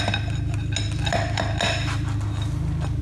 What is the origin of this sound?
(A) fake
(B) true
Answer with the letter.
B